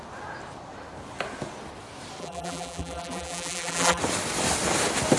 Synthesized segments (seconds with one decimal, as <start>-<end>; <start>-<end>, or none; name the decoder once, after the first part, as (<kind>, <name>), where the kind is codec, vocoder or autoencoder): 2.2-4.0 (vocoder, BigVGAN v2)